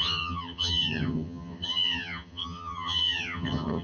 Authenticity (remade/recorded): remade